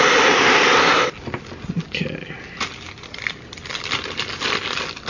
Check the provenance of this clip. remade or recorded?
recorded